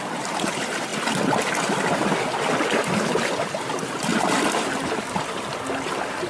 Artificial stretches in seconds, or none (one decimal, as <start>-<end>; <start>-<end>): none